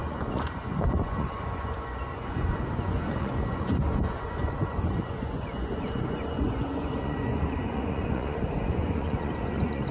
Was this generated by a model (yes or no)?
yes